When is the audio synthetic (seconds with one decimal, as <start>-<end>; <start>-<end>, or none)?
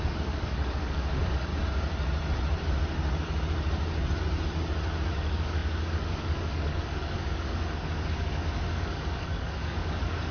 0.0-1.5; 5.1-10.3